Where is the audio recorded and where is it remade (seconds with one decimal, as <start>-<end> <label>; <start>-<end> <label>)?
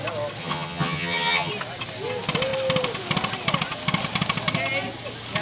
0.0-0.4 recorded; 0.4-1.5 remade; 1.5-5.4 recorded